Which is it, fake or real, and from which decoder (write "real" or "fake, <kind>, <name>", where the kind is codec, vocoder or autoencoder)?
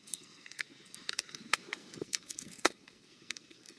fake, codec, SNAC